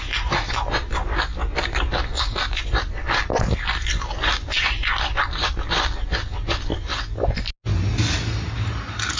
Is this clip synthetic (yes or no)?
no